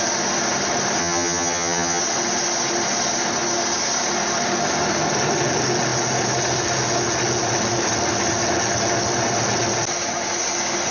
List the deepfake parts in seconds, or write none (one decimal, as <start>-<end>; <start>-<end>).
1.0-2.0